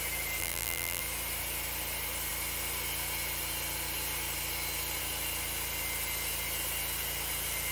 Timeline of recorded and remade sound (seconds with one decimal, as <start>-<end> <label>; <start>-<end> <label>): 0.0-0.4 recorded; 0.4-1.0 remade; 1.0-7.7 recorded